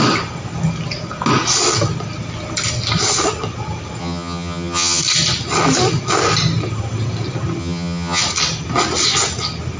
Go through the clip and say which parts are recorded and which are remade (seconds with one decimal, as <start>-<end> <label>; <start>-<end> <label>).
0.0-4.0 recorded; 4.0-5.0 remade; 5.0-7.6 recorded; 7.6-8.2 remade; 8.2-9.8 recorded